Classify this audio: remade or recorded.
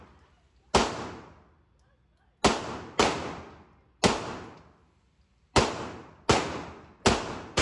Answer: recorded